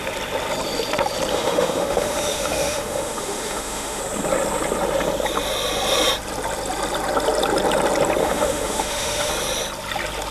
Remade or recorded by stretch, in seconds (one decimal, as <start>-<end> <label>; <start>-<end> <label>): 0.0-1.3 recorded; 1.3-4.0 remade; 4.0-8.2 recorded; 8.2-9.3 remade; 9.3-10.3 recorded